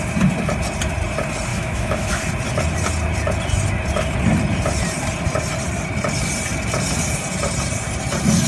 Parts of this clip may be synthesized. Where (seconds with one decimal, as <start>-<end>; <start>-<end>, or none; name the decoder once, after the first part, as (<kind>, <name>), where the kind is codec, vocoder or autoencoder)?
1.5-2.2 (autoencoder, DAC-VAE)